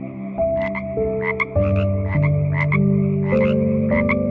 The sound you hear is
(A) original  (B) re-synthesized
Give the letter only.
A